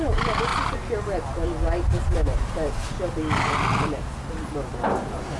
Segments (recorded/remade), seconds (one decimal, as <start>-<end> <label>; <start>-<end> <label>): 0.0-5.4 recorded